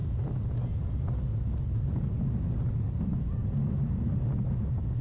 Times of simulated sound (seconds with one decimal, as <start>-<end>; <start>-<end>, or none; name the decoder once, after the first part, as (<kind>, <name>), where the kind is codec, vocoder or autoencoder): none